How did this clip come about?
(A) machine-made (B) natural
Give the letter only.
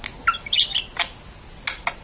B